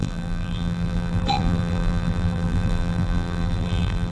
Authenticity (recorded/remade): remade